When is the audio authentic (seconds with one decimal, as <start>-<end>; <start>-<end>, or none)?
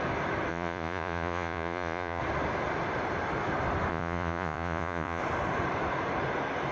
0.0-0.5; 2.2-3.9; 5.2-6.7